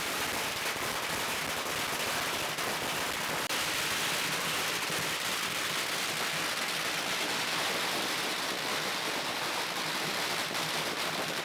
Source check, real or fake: real